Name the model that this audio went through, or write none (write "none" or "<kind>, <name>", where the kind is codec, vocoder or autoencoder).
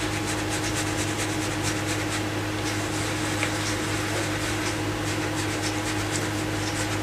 none